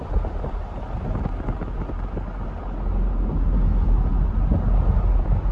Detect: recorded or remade recorded